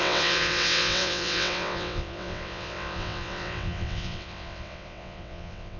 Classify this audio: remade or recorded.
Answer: remade